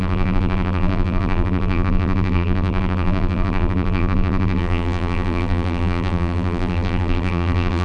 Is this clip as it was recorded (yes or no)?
no